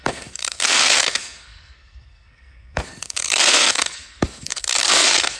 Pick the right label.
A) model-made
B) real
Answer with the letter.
A